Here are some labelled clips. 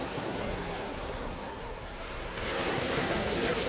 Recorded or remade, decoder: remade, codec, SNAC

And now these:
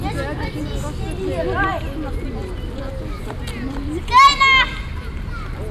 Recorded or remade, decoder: recorded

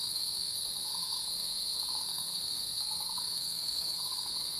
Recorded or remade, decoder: remade, codec, SNAC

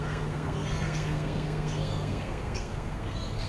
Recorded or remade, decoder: remade, codec, SNAC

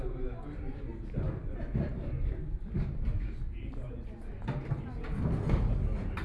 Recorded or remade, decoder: recorded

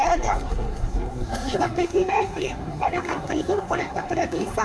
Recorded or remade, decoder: remade, codec, SNAC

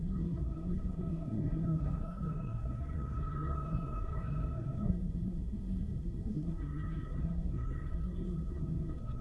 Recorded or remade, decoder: remade, codec, SNAC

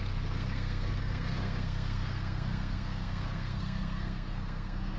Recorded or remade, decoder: remade, codec, SNAC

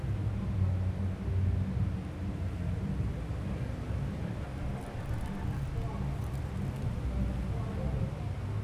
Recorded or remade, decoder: recorded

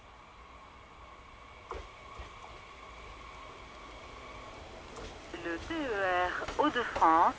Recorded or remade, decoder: recorded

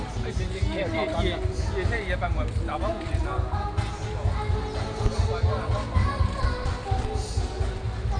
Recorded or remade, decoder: recorded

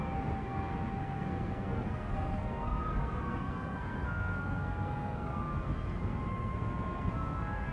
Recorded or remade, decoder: remade, codec, SNAC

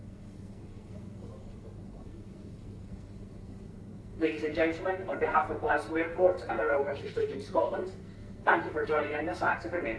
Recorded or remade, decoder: remade, codec, SNAC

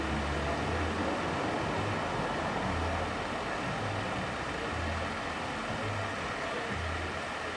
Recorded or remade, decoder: recorded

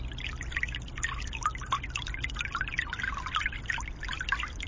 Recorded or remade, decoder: recorded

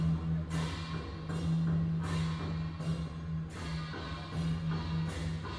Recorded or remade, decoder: recorded